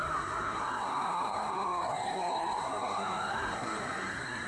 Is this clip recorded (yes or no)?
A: no